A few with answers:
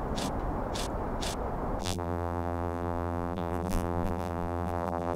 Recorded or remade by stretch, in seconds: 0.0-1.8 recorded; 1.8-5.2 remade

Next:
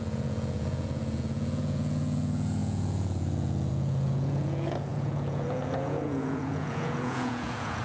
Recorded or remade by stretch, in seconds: 0.0-7.8 remade

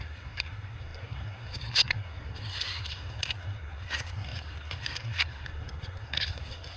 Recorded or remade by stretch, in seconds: 0.0-6.8 remade

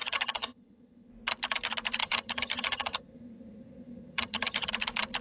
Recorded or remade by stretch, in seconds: 0.0-1.1 remade; 1.1-2.0 recorded; 2.0-4.7 remade; 4.7-5.2 recorded

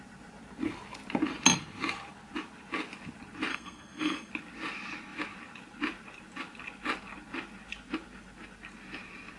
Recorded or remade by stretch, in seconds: 0.0-3.5 recorded; 3.5-4.3 remade; 4.3-9.4 recorded

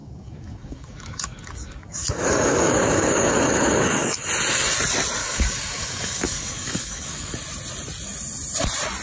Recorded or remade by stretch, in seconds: 0.0-4.3 remade; 4.3-5.2 recorded; 5.2-7.3 remade; 7.3-9.0 recorded

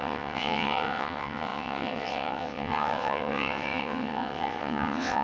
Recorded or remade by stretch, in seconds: 0.0-5.2 remade